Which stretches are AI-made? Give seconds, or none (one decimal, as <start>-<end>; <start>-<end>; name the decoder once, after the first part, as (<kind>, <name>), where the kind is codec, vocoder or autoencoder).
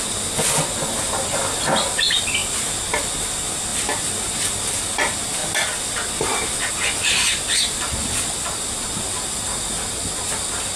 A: none